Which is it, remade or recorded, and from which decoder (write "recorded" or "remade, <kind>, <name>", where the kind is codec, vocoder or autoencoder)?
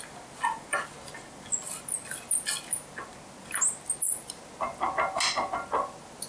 recorded